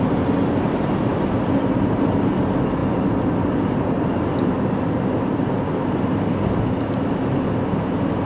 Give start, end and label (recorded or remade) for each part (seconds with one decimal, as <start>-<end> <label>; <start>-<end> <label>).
0.0-8.2 recorded